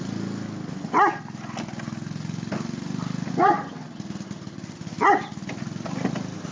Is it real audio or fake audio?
real